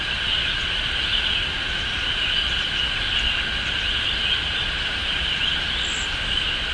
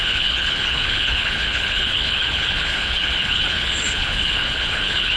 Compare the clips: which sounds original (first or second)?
first